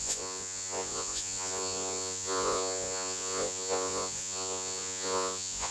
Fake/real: fake